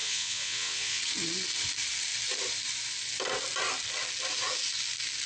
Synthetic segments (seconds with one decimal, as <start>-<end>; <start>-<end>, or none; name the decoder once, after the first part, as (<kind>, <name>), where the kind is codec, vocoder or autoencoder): 0.0-1.0 (vocoder, WaveNeXt)